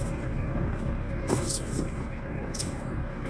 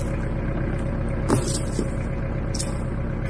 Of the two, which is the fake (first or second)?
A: first